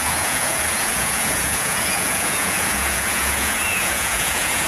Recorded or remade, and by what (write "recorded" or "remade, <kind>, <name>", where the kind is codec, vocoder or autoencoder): remade, vocoder, Vocos